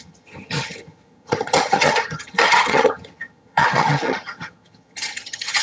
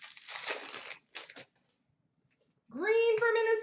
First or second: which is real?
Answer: second